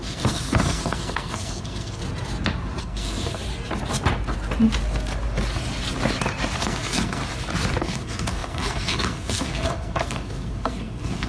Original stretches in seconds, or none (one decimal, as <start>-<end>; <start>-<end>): 2.0-2.8; 3.4-6.6; 7.2-7.8